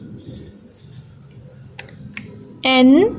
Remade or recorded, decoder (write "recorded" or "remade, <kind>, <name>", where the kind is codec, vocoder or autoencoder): recorded